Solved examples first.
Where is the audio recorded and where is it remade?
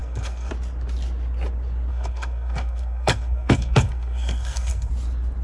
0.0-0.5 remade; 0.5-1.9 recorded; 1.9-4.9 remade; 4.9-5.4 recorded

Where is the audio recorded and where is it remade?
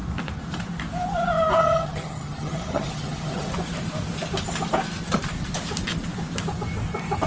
0.0-1.6 recorded; 1.6-3.5 remade; 3.5-7.3 recorded